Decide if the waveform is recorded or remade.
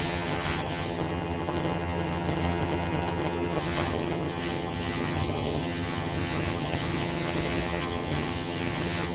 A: remade